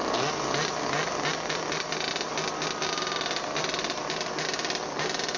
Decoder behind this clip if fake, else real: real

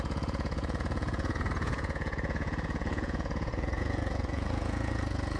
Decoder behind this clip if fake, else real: fake, vocoder, Vocos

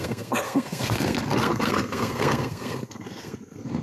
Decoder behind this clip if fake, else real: fake, codec, SNAC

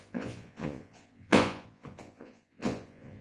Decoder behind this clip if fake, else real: fake, vocoder, Vocos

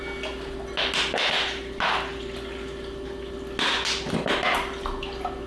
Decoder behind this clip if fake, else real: real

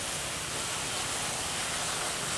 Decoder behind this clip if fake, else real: real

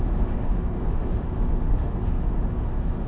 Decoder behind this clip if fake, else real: fake, autoencoder, DAC-VAE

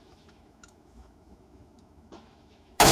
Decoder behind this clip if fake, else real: fake, autoencoder, DAC-VAE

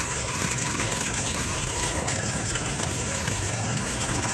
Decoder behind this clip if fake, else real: fake, codec, SNAC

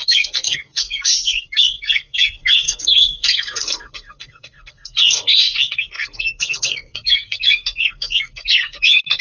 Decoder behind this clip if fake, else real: fake, codec, SNAC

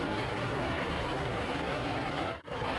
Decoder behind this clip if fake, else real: fake, codec, SNAC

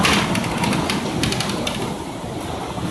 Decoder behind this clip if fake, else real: real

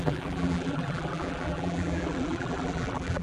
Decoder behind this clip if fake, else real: fake, vocoder, BigVGAN v2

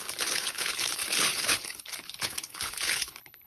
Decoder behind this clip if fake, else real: fake, codec, HILCodec